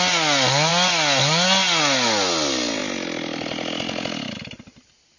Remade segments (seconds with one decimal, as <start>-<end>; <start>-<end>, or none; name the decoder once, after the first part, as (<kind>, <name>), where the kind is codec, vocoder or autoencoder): none